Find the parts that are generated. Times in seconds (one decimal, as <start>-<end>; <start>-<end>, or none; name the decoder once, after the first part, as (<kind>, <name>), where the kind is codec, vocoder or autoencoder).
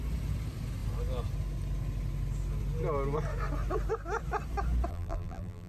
4.9-5.7 (vocoder, BigVGAN v2)